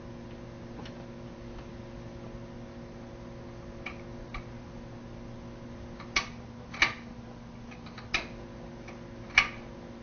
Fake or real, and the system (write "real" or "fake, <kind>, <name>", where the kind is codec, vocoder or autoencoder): real